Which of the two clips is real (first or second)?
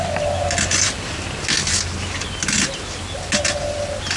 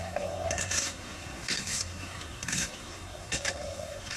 first